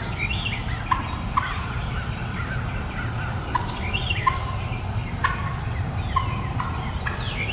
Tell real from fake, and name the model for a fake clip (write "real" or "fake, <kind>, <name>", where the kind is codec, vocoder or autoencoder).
real